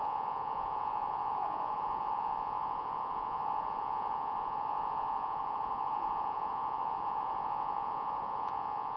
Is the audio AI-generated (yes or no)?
yes